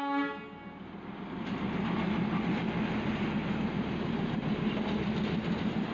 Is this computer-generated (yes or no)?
no